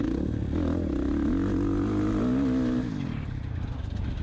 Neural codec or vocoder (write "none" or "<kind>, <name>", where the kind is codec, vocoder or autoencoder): none